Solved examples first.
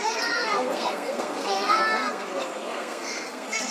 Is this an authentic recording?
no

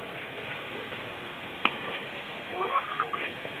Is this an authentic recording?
no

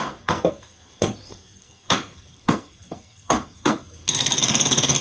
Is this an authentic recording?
no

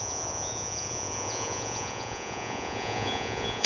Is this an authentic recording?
no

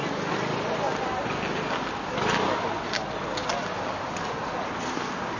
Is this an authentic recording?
yes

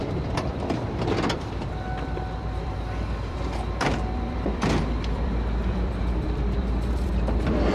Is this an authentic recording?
no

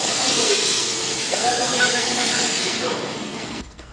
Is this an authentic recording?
no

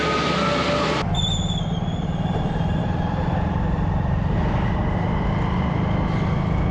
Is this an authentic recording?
yes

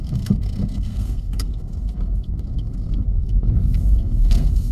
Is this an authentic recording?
no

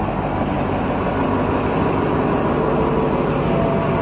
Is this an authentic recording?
yes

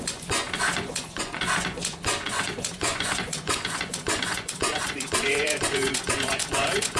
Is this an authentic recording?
no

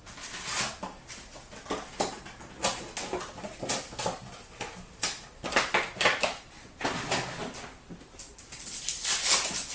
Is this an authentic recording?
yes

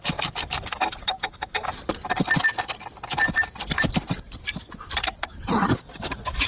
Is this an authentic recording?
yes